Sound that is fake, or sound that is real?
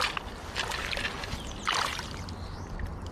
real